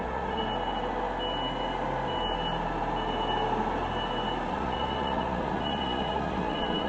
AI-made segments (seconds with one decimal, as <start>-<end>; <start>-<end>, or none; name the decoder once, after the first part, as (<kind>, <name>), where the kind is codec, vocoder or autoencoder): 0.0-0.4 (vocoder, Vocos); 4.5-6.9